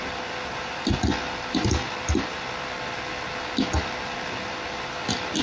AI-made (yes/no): no